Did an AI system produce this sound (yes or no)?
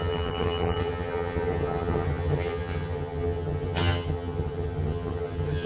yes